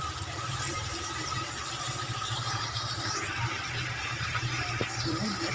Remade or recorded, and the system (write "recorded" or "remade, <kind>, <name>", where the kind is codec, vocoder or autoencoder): remade, vocoder, BigVGAN v2